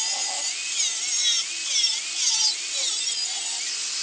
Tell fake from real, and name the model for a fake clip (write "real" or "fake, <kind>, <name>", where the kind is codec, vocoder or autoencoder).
real